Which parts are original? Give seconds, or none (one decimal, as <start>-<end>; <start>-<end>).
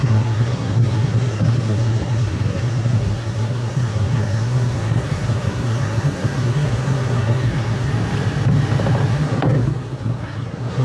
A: 7.9-9.1